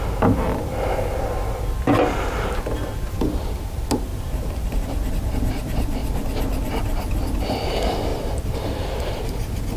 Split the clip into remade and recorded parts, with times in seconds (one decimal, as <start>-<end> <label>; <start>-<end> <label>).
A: 0.0-4.1 recorded; 4.1-4.8 remade; 4.8-8.1 recorded; 8.1-9.1 remade; 9.1-9.8 recorded